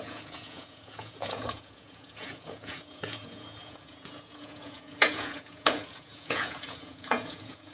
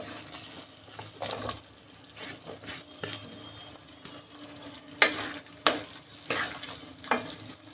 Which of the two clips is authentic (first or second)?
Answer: second